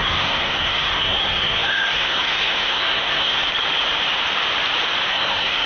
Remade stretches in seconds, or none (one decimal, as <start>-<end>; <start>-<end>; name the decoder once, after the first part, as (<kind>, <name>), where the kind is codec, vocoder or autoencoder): 0.0-3.4 (codec, SNAC); 5.1-5.7